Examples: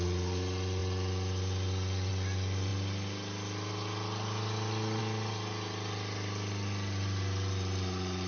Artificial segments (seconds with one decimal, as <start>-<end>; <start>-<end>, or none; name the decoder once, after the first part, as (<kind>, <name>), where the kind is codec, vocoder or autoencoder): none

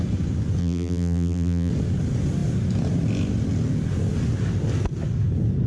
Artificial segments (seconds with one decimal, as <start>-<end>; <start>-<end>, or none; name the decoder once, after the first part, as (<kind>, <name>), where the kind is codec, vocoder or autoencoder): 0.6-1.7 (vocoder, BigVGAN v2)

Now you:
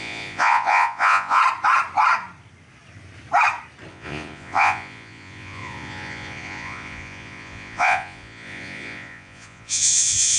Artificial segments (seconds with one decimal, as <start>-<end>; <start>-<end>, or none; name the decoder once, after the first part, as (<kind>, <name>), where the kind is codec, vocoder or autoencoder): 0.0-1.4 (vocoder, Vocos); 3.9-10.4

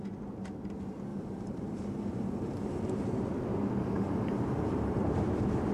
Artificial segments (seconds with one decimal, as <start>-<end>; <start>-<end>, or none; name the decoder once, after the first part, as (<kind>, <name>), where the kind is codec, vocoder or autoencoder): 1.1-2.8 (vocoder, BigVGAN v2); 3.8-5.0

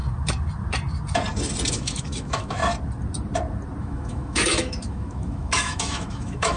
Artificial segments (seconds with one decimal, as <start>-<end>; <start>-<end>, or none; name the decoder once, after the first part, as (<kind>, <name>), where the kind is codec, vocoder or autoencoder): 1.7-2.6 (autoencoder, DAC-VAE); 3.8-6.6